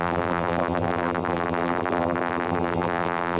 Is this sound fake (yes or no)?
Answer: yes